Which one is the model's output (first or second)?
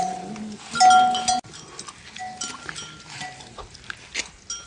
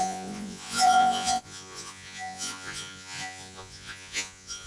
second